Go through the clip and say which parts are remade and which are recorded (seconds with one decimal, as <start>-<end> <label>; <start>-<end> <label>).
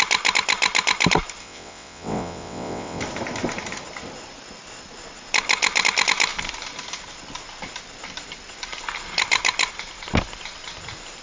0.0-1.4 recorded; 1.4-3.0 remade; 3.0-11.2 recorded